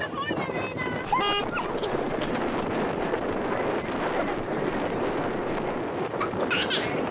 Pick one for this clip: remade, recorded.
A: recorded